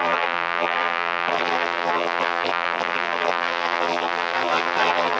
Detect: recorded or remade remade